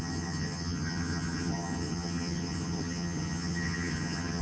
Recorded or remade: remade